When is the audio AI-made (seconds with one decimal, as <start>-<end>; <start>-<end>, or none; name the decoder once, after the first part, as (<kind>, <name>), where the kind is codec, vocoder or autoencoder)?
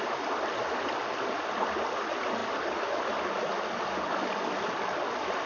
none